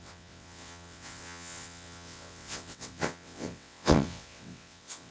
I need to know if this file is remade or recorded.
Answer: remade